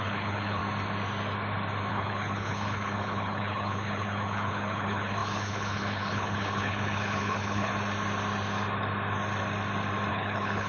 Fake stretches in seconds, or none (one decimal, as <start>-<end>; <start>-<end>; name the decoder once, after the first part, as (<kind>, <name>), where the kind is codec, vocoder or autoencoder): 0.0-0.6 (codec, HILCodec); 1.9-7.7; 10.1-10.7